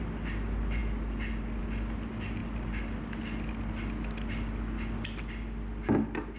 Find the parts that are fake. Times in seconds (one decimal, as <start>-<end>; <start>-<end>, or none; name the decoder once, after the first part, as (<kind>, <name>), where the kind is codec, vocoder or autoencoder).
none